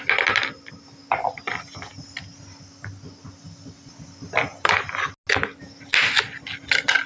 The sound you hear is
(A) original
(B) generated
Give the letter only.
A